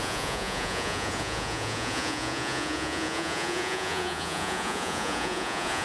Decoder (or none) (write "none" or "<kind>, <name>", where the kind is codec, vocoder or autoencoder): vocoder, Vocos